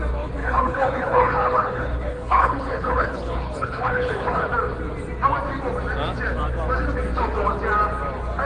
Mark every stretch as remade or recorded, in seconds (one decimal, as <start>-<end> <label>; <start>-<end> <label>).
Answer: 0.0-0.4 recorded; 0.4-4.5 remade; 4.5-8.5 recorded